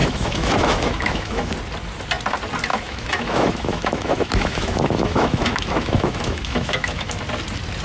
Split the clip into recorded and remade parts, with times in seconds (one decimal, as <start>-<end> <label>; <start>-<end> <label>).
0.0-1.5 remade; 1.5-2.7 recorded; 2.7-7.2 remade; 7.2-7.8 recorded